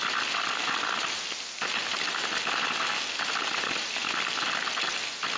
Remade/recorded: recorded